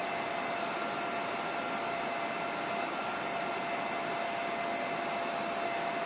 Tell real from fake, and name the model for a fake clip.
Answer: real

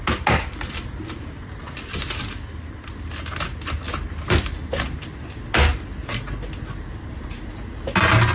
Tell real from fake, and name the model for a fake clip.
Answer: real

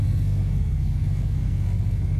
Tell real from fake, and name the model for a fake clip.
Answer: fake, codec, SNAC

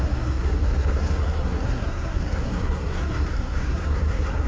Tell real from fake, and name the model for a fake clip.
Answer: fake, codec, SNAC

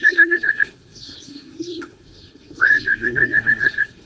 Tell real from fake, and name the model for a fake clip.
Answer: fake, codec, SNAC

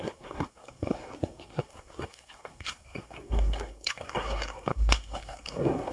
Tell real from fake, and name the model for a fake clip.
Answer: fake, codec, SNAC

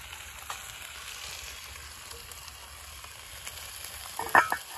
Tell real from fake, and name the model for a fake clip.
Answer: real